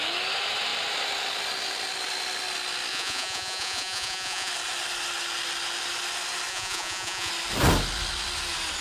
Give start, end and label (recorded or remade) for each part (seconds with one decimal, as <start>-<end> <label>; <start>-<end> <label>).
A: 0.0-2.9 recorded; 2.9-4.5 remade; 4.5-6.5 recorded; 6.5-7.3 remade; 7.3-8.8 recorded